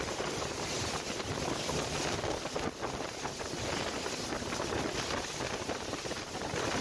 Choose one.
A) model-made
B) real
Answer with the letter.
B